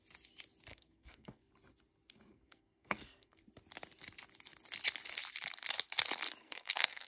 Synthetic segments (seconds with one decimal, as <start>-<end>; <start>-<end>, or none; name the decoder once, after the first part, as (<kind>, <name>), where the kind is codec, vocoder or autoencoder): 0.7-1.5 (codec, SNAC); 2.3-3.4; 6.4-7.1

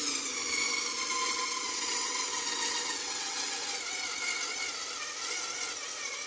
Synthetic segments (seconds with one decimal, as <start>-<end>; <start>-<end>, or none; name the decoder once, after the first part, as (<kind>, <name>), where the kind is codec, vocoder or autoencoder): 1.2-3.5 (vocoder, WaveNeXt)

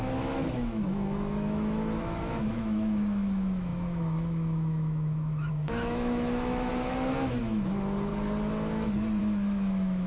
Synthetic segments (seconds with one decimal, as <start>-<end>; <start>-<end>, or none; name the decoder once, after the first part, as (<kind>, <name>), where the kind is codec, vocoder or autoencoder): 0.0-6.7 (autoencoder, DAC-VAE); 7.4-8.1; 9.2-10.1

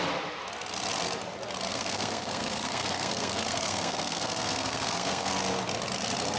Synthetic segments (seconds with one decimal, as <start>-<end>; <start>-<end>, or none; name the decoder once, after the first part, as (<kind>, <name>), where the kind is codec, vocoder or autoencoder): 1.7-5.3 (codec, SNAC)

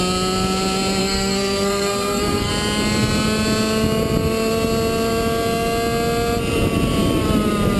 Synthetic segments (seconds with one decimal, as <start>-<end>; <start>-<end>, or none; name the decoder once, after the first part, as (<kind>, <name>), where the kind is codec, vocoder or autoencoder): 1.0-2.5 (codec, SNAC)

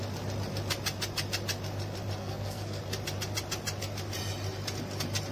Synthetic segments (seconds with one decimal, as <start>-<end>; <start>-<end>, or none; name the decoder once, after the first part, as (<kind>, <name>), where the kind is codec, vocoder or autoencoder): 2.2-2.8 (codec, SNAC)